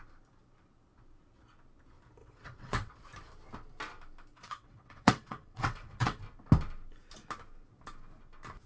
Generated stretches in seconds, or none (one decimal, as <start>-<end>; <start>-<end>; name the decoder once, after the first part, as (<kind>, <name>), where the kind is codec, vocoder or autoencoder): 2.2-2.9 (vocoder, WaveNeXt); 4.3-6.2